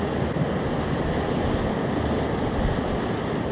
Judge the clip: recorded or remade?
recorded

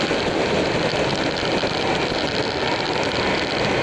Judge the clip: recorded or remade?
recorded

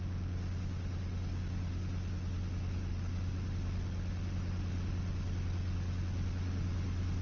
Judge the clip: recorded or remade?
recorded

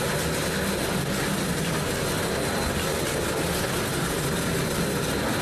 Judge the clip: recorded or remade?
recorded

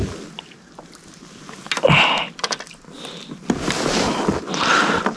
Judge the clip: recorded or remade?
recorded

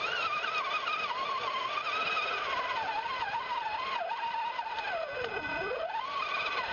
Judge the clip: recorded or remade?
recorded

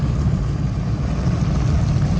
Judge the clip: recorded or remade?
recorded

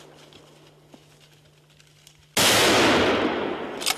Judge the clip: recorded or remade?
recorded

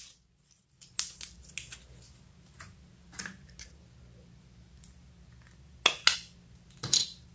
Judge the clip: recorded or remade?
recorded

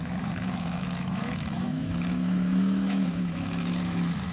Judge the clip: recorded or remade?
remade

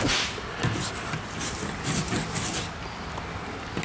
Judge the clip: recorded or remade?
recorded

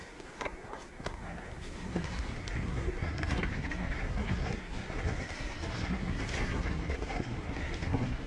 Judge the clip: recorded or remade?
remade